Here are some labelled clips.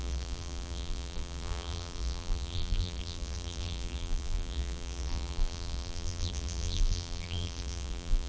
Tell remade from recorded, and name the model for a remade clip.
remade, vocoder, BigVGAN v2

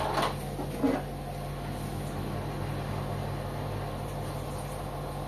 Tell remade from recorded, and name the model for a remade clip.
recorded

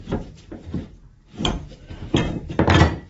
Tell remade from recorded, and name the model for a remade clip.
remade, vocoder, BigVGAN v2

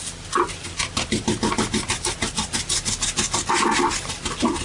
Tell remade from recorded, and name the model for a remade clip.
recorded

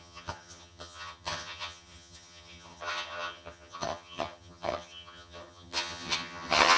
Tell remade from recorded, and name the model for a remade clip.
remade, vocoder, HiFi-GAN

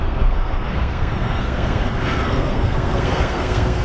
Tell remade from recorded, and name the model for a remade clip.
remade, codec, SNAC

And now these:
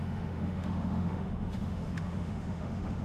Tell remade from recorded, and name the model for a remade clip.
remade, autoencoder, DAC-VAE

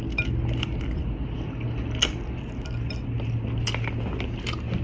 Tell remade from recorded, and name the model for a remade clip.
recorded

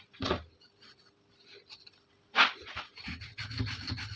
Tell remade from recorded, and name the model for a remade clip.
recorded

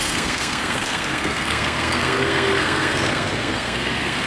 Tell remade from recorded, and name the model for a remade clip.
remade, codec, SNAC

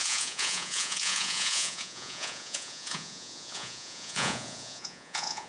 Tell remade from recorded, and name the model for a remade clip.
remade, vocoder, Vocos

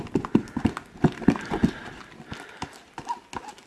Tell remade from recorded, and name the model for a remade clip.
recorded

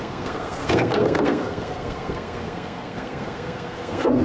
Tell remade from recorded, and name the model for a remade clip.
remade, codec, SNAC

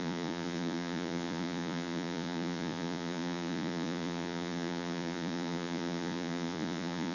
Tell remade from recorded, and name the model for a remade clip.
remade, vocoder, Vocos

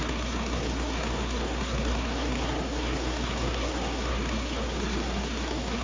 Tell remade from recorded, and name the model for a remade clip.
remade, codec, SNAC